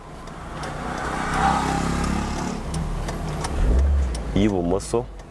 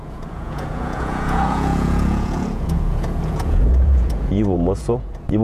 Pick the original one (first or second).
first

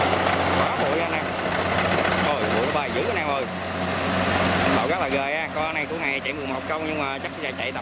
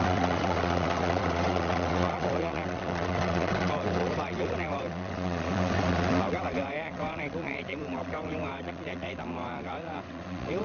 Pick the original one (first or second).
first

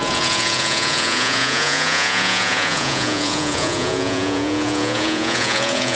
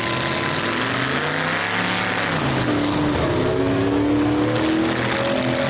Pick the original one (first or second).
second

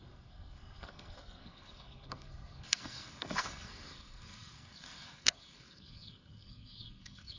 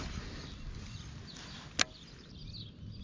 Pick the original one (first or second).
second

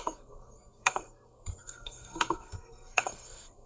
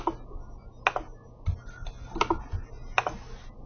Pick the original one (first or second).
second